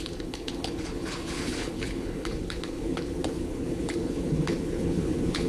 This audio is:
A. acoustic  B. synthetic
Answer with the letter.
B